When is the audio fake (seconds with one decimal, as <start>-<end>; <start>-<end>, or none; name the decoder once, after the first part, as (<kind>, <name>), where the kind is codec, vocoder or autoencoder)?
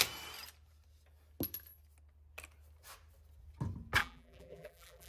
4.0-5.1 (vocoder, BigVGAN v2)